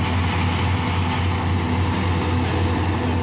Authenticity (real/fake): real